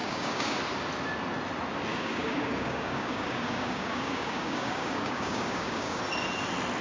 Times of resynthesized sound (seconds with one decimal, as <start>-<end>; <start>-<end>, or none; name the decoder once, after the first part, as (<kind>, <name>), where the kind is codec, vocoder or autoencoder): 0.0-0.6 (codec, DAC); 1.9-6.0